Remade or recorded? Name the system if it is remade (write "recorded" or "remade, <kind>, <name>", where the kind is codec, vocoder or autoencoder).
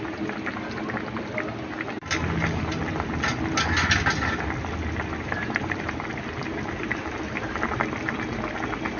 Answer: recorded